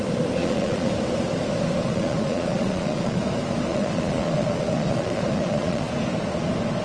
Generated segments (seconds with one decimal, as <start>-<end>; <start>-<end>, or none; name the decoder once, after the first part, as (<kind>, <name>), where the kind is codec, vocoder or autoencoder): 0.4-0.9 (vocoder, Vocos); 1.9-3.2; 3.7-5.9